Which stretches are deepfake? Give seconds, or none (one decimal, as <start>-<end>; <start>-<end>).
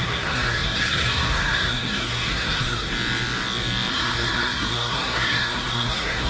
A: 0.0-2.9; 3.9-6.3